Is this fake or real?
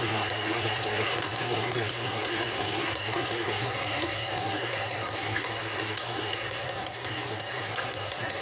fake